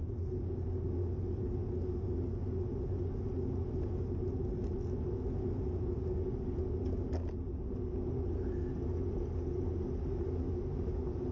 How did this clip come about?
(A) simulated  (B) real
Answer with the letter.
B